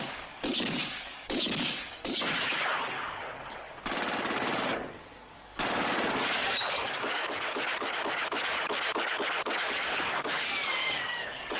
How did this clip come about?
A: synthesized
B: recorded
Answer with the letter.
A